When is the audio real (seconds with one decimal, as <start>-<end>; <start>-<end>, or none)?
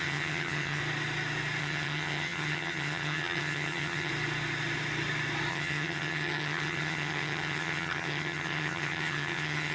0.8-1.6; 4.1-5.5